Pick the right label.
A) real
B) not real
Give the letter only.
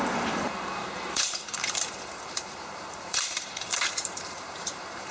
B